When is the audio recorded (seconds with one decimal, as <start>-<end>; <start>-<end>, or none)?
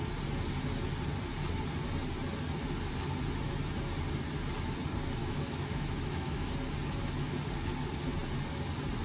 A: 0.0-5.2; 6.5-9.0